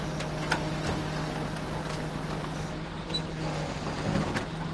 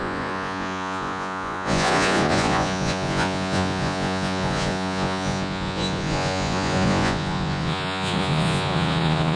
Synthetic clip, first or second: second